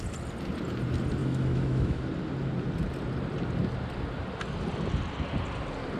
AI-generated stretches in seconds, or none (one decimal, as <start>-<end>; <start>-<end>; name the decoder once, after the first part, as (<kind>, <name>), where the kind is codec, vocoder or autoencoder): 1.2-2.0 (autoencoder, DAC-VAE)